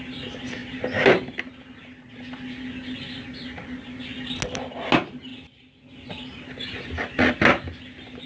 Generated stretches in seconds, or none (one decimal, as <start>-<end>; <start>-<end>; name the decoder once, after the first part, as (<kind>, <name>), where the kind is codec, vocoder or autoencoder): none